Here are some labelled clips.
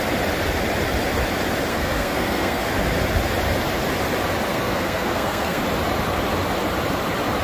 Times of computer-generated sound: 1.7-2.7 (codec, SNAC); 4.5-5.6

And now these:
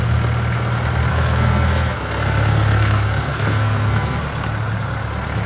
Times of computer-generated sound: 1.1-4.2 (codec, SNAC)

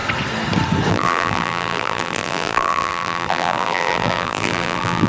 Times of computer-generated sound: 0.9-5.1 (vocoder, BigVGAN v2)

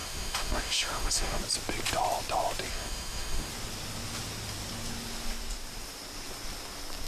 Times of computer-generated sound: 0.0-1.4 (autoencoder, DAC-VAE); 2.7-3.5

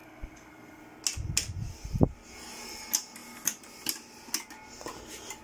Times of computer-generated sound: 0.0-0.8 (codec, SNAC)